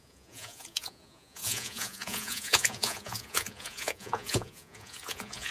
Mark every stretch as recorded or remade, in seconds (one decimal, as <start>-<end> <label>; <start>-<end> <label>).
0.0-5.5 remade